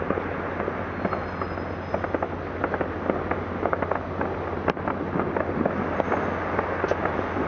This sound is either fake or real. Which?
real